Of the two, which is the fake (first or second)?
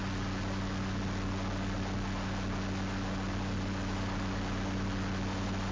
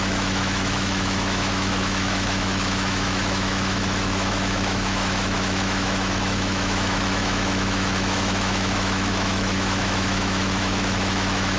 second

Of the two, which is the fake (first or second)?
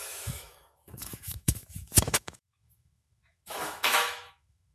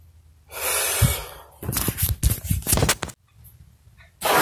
first